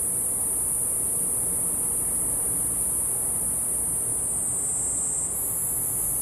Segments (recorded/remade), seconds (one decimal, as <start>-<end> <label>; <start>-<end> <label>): 0.0-6.2 recorded